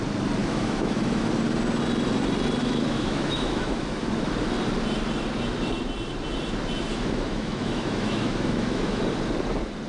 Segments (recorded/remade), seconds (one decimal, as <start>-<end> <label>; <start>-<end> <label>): 0.0-0.4 recorded; 0.4-1.3 remade; 1.3-2.6 recorded; 2.6-4.3 remade; 4.3-6.9 recorded; 6.9-9.0 remade; 9.0-9.9 recorded